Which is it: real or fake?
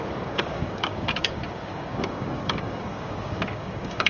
fake